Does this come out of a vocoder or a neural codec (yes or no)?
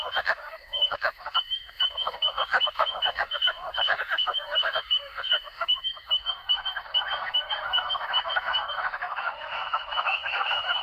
yes